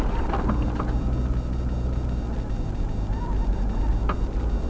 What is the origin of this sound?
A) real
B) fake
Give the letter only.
A